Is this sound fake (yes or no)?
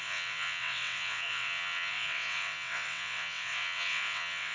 yes